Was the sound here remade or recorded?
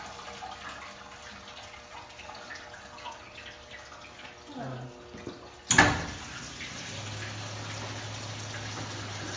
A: recorded